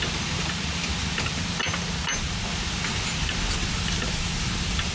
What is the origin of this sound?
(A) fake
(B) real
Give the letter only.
B